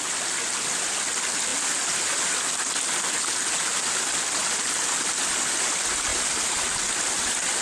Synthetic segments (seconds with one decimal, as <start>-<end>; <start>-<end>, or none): none